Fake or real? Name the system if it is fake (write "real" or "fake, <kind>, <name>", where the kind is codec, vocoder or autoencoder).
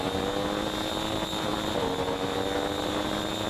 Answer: real